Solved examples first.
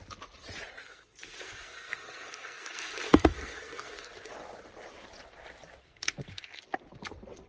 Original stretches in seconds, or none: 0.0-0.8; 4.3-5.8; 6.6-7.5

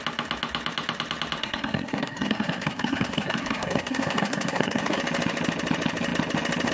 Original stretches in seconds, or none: 0.0-1.4; 5.0-6.7

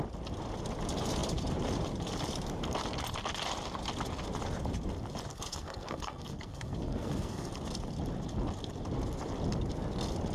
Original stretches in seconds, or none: 0.0-5.3; 7.5-10.3

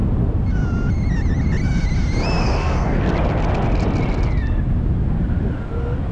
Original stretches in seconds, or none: 0.0-2.4; 3.0-6.1

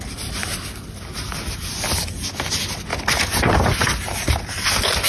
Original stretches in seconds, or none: 0.0-5.1